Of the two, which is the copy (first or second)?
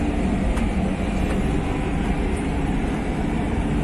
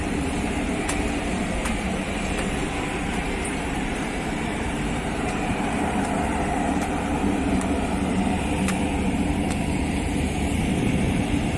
second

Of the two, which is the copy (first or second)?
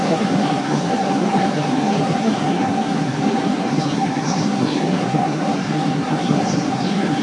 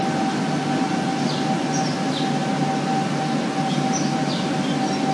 first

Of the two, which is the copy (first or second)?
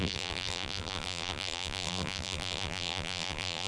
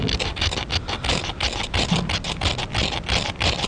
first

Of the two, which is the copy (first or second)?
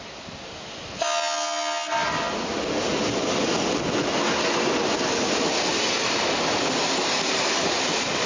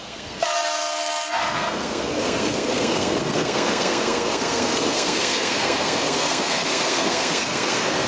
second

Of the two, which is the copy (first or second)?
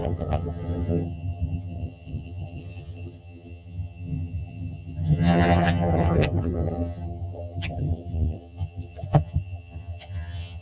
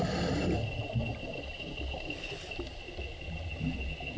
first